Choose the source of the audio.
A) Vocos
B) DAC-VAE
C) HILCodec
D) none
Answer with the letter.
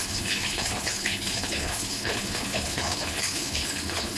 C